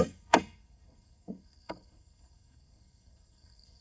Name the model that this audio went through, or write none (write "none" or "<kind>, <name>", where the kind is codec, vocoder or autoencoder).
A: codec, SNAC